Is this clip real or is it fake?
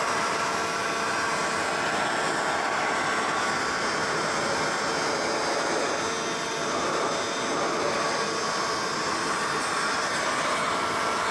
real